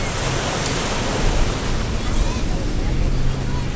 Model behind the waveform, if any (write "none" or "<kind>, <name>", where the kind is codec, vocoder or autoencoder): none